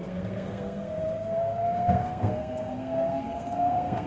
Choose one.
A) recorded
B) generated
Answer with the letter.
B